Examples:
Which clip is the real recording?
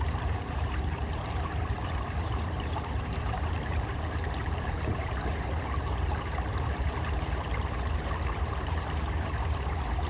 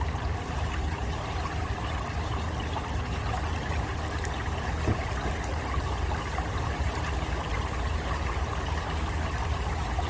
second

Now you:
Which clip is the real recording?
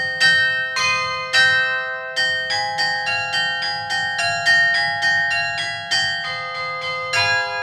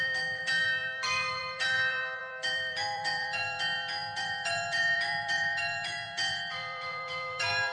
first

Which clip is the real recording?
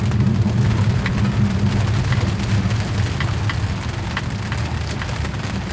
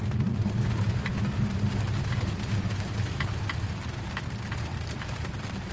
first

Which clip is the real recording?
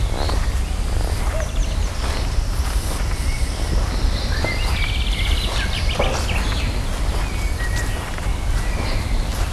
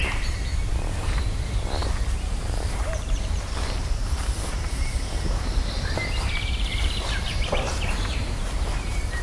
first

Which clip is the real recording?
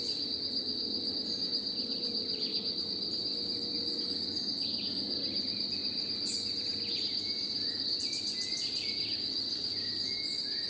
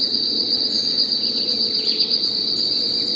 first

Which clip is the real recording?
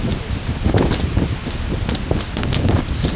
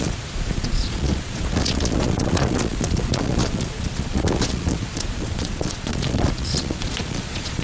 first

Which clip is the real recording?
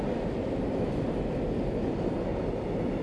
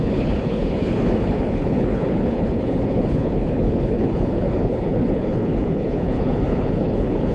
first